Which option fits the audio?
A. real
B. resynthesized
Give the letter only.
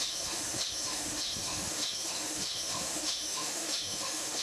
B